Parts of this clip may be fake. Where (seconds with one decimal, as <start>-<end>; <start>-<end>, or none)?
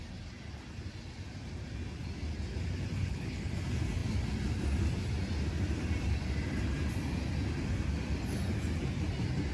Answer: 3.0-3.5